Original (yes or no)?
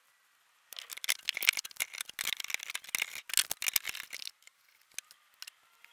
yes